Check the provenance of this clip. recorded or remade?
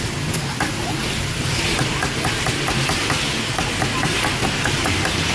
recorded